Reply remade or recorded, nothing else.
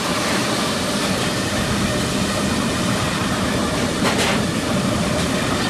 remade